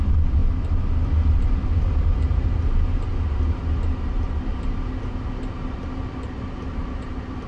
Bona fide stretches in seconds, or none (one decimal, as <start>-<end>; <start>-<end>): 0.0-7.5